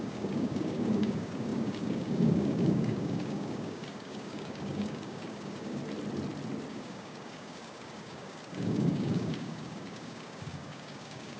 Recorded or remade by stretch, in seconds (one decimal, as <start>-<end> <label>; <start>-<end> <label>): 0.0-5.8 remade; 5.8-6.7 recorded; 6.7-11.4 remade